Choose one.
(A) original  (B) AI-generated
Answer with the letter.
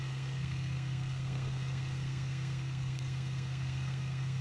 B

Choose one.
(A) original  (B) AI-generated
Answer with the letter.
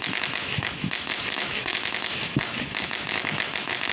B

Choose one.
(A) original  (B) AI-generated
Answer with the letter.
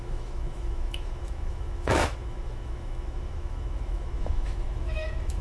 B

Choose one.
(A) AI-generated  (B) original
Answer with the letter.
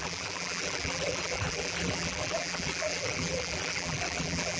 A